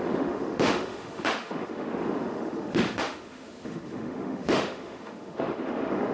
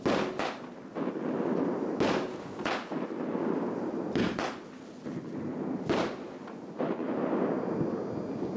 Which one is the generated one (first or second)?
first